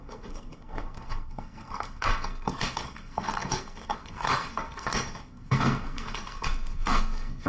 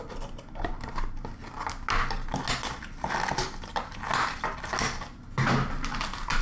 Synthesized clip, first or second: first